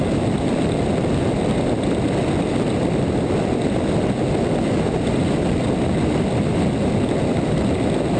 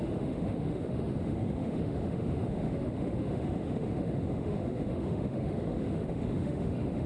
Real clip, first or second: first